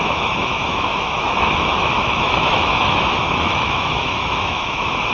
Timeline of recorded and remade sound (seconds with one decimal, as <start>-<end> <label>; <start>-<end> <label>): 0.0-5.1 remade